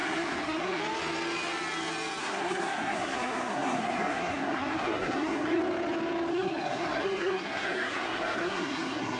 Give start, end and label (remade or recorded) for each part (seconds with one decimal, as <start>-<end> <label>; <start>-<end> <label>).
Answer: 0.0-0.8 remade; 0.8-2.2 recorded; 2.2-5.6 remade; 5.6-6.3 recorded; 6.3-9.2 remade